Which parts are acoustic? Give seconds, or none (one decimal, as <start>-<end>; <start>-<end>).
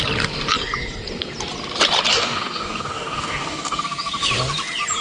0.0-2.1; 3.8-5.0